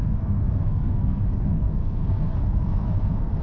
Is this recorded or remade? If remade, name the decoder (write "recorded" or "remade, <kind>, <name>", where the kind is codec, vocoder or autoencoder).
remade, codec, SNAC